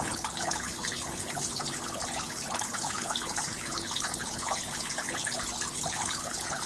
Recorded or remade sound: remade